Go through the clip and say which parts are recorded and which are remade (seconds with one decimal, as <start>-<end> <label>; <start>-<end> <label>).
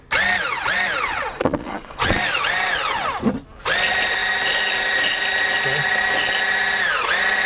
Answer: 0.0-1.1 recorded; 1.1-2.2 remade; 2.2-7.5 recorded